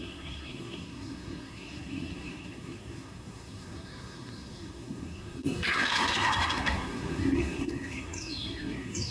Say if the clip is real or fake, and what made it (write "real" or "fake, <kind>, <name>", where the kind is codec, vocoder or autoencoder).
fake, codec, SNAC